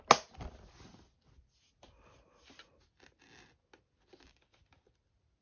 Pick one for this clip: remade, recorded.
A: recorded